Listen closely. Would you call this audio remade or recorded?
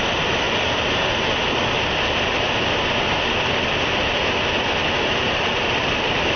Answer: recorded